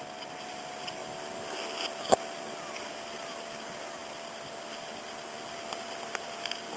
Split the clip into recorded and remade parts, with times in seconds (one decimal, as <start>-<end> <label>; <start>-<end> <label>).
0.0-6.8 recorded